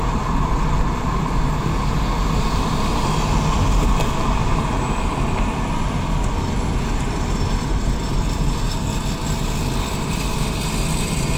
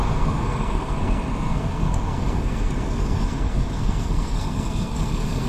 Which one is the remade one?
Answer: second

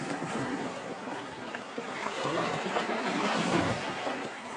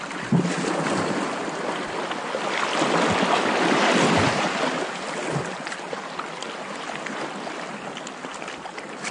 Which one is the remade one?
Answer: first